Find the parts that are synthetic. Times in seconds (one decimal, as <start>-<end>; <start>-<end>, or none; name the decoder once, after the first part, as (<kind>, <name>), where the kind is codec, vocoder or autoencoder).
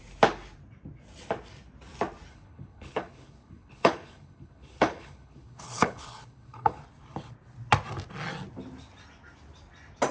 2.3-6.8 (codec, HILCodec)